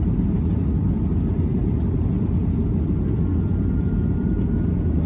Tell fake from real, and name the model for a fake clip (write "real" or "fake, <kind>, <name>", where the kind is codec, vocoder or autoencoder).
real